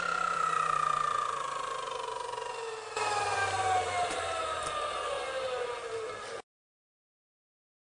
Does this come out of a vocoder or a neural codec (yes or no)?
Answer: yes